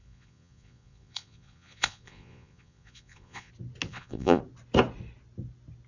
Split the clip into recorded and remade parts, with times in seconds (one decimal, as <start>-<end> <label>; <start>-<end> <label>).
0.0-3.5 remade; 3.5-3.9 recorded; 3.9-4.4 remade; 4.4-5.9 recorded